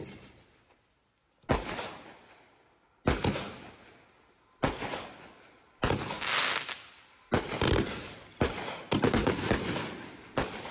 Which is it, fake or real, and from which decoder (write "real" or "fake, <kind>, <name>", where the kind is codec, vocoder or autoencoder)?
real